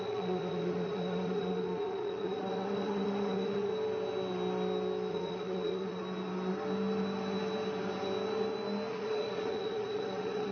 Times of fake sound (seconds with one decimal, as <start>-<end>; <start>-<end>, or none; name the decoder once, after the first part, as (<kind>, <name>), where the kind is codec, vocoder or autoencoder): 0.0-3.7 (vocoder, Vocos); 5.1-6.0; 8.9-10.5